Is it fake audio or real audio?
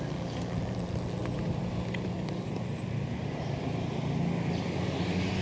real